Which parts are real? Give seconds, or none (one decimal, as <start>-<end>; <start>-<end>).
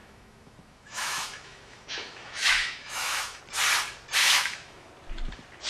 3.4-4.2; 4.9-5.7